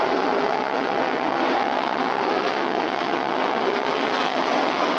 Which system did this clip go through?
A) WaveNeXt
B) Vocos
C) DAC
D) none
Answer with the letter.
A